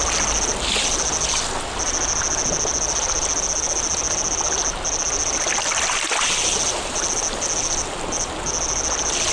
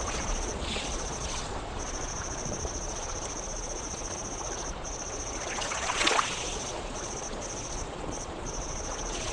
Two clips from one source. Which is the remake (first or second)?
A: second